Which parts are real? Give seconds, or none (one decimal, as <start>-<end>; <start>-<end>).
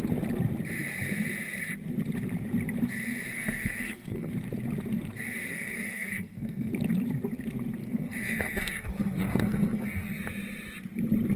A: 0.0-3.3; 4.3-5.5; 6.7-7.8; 10.2-11.4